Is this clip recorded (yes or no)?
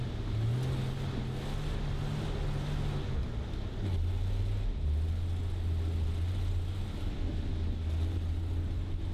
yes